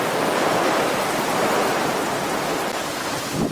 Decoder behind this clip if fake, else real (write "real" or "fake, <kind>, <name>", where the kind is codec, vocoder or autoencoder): real